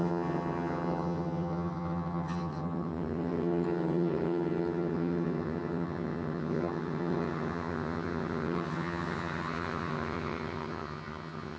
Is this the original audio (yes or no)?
no